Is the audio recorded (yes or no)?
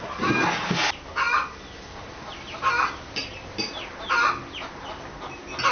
yes